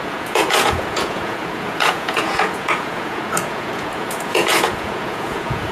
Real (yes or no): no